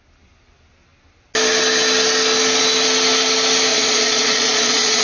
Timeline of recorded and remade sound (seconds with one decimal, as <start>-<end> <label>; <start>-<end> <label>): 0.0-3.7 recorded; 3.7-5.0 remade